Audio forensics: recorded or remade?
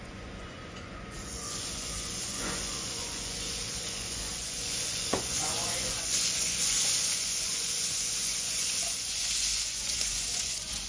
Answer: remade